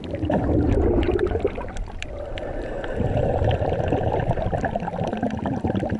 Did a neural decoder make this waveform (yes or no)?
no